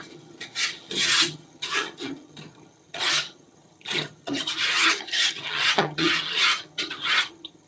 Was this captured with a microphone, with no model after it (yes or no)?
no